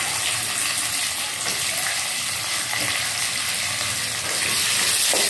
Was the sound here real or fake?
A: real